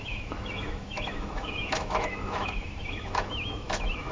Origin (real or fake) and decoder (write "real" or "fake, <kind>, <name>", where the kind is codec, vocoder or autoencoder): fake, autoencoder, DAC-VAE